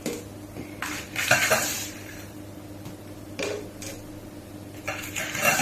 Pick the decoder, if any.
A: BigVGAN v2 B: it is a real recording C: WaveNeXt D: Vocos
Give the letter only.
A